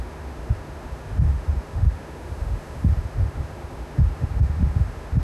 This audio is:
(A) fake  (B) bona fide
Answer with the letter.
A